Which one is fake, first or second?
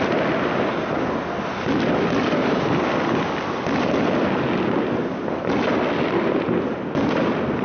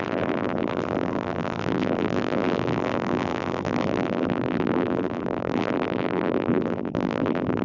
second